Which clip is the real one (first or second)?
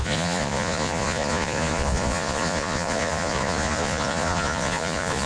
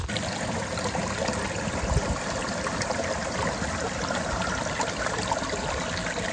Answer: second